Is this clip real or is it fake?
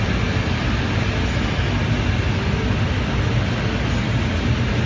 real